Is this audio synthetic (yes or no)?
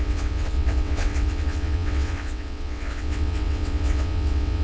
yes